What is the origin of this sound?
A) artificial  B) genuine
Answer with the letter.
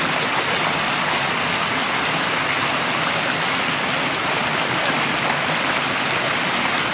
B